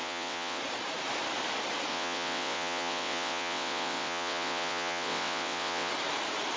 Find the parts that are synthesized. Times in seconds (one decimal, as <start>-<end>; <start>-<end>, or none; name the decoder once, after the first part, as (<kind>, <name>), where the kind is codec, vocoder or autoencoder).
0.0-0.6 (vocoder, WaveNeXt); 1.9-5.9